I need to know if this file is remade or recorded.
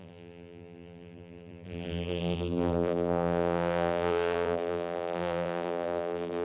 remade